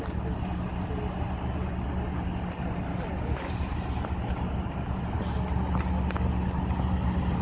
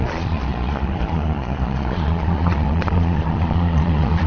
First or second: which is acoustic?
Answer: first